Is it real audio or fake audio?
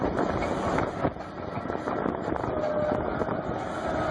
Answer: real